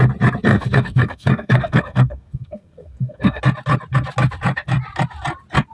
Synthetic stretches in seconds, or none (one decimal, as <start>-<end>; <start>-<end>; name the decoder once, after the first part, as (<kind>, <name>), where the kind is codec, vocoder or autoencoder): 0.5-3.4 (codec, SNAC)